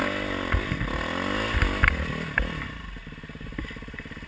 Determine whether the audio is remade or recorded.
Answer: recorded